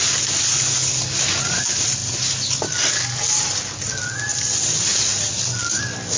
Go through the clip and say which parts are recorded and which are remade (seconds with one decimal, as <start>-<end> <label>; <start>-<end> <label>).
0.0-6.2 recorded